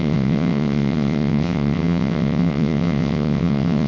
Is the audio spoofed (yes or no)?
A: yes